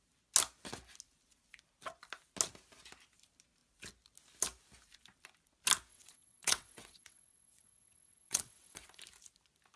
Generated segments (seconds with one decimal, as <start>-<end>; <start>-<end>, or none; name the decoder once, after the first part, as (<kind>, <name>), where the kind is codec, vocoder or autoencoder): 5.9-9.0 (vocoder, WaveNeXt)